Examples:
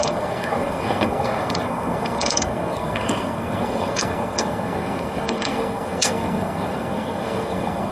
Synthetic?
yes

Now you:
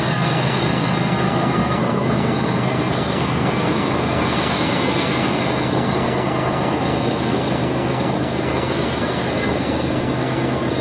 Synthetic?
yes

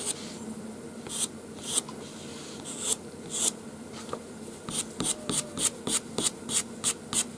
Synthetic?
no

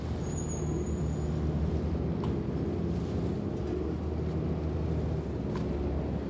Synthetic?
no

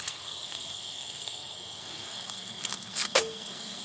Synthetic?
yes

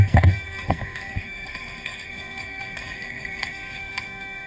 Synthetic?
yes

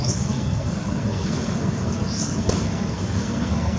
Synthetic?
yes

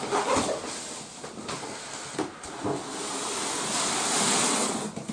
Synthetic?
no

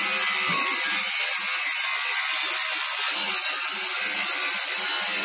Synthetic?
no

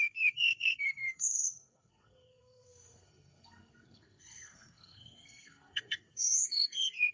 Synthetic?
yes